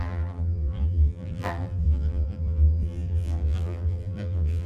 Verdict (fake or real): fake